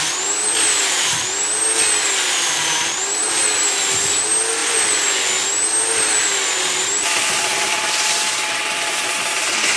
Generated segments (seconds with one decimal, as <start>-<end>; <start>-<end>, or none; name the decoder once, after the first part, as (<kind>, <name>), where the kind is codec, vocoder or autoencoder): 4.6-5.3 (vocoder, Vocos)